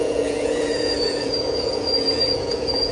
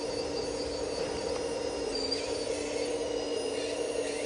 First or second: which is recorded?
second